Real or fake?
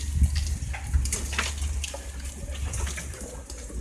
real